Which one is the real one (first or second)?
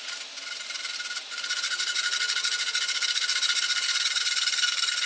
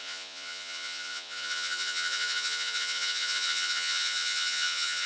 first